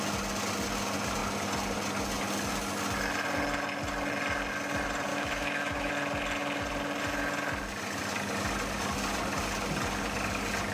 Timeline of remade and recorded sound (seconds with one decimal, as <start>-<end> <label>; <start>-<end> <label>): 0.0-5.1 recorded; 5.1-5.9 remade; 5.9-10.7 recorded